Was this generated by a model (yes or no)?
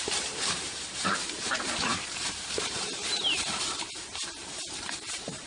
yes